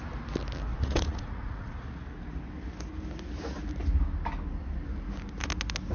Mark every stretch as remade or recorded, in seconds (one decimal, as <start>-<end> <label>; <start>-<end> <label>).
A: 0.0-0.7 recorded; 0.7-2.0 remade; 2.0-5.9 recorded